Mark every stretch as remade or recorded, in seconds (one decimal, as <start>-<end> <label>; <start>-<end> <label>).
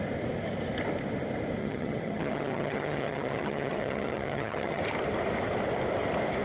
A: 0.0-1.6 recorded; 1.6-4.8 remade; 4.8-6.4 recorded